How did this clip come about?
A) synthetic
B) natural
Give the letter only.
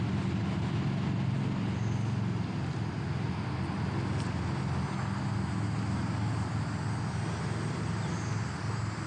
B